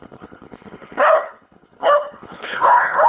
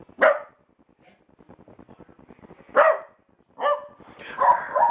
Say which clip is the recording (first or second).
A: second